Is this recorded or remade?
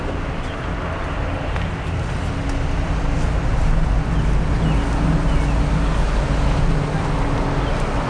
recorded